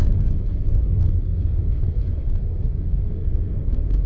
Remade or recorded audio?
remade